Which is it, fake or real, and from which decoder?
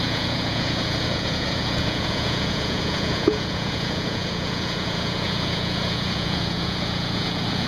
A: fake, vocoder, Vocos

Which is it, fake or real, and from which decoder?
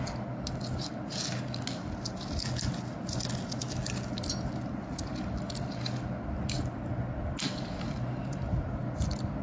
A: real